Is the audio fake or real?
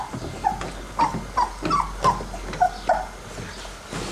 real